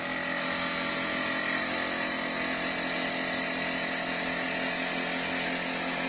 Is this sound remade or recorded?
recorded